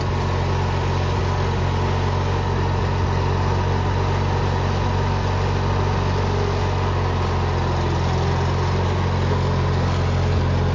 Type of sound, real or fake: real